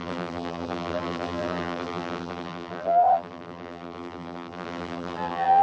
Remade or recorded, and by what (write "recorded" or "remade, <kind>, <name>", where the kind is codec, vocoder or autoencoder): remade, vocoder, BigVGAN v2